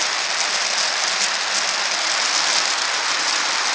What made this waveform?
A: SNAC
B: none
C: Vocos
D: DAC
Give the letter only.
B